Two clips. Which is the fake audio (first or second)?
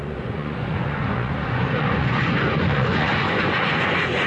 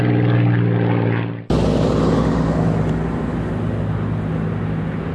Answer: first